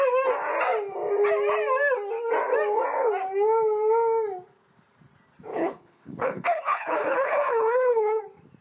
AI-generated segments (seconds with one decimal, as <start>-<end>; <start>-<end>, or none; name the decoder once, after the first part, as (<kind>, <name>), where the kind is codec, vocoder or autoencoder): 5.5-8.2 (codec, HILCodec)